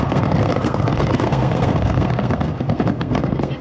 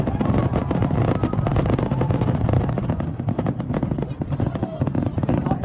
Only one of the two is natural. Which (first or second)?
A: second